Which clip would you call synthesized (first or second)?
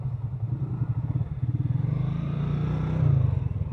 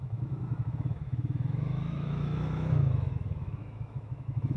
second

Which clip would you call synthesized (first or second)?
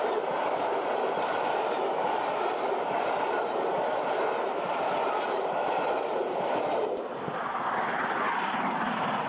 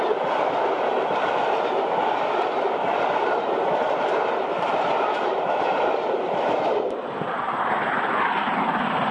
second